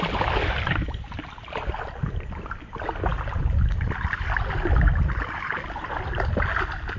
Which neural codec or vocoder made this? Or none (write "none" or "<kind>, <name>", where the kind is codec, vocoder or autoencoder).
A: none